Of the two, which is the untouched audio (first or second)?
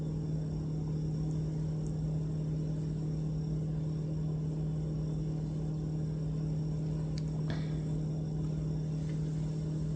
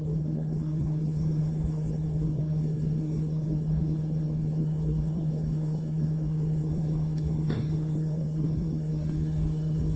first